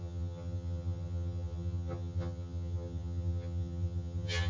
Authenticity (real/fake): fake